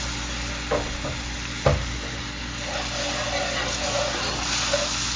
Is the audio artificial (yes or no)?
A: no